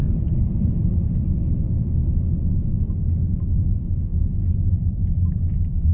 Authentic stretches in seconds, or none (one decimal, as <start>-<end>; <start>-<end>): 0.0-0.5; 1.4-2.1; 4.1-4.7